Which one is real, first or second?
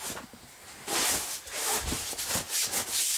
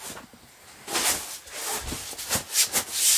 second